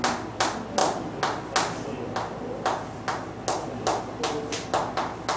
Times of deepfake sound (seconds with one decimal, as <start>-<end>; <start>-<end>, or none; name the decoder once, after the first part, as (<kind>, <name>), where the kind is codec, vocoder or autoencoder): none